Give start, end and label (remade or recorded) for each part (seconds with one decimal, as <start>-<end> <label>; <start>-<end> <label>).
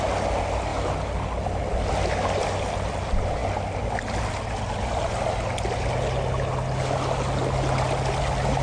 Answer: 0.0-8.6 recorded